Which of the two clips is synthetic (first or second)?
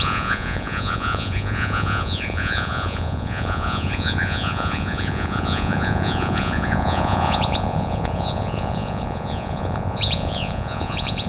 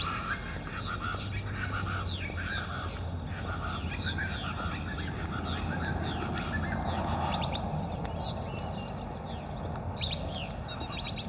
first